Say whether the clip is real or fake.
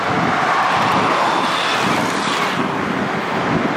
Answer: real